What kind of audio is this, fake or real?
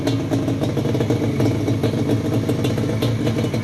real